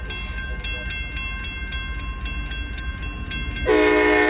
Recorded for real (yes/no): yes